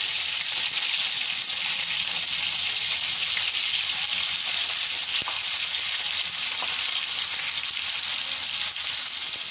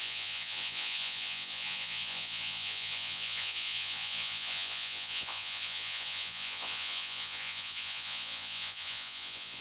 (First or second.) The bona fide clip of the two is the first